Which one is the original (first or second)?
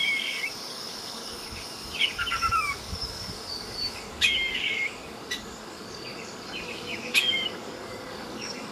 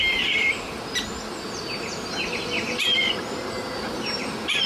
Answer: second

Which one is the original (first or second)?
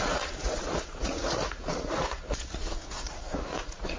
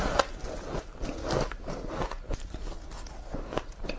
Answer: second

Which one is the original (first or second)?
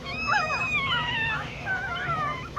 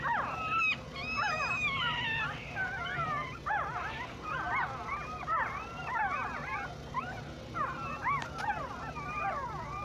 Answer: second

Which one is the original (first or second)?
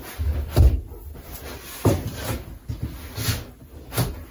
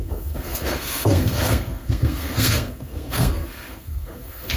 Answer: first